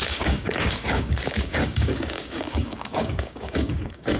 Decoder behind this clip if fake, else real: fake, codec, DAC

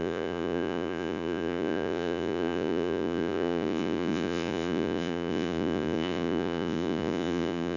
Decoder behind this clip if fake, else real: fake, vocoder, Vocos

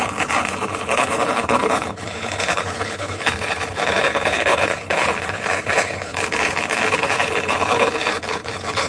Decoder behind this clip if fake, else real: fake, codec, HILCodec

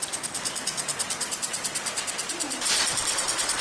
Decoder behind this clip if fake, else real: real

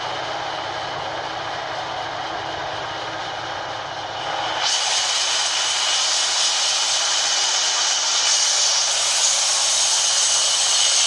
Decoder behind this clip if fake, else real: real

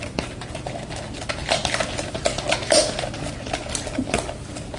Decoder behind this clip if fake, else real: real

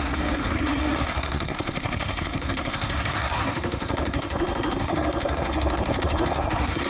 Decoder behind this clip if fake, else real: fake, codec, SNAC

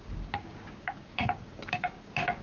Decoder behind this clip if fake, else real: fake, codec, DAC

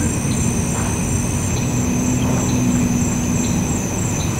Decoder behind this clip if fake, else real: real